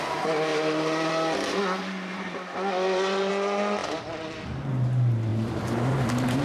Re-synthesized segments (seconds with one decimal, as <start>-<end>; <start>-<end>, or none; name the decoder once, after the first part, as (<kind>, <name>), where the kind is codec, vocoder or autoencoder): 2.1-3.3 (vocoder, BigVGAN v2); 3.8-4.4; 5.3-5.9